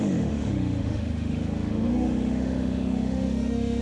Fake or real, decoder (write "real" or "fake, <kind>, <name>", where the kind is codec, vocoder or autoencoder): fake, autoencoder, DAC-VAE